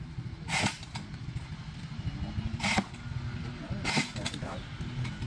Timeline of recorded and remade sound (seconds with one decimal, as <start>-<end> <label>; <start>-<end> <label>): 0.0-5.3 recorded